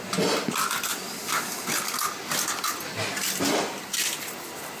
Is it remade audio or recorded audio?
recorded